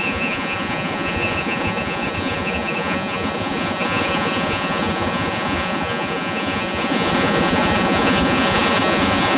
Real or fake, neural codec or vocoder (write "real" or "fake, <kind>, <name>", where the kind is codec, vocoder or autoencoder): fake, vocoder, Vocos